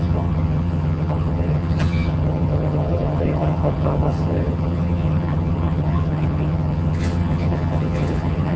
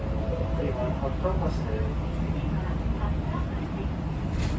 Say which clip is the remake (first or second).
first